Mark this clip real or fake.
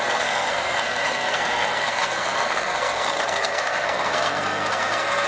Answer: fake